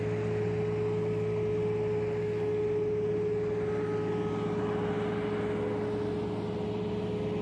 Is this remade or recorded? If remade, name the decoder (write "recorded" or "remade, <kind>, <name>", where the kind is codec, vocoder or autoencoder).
recorded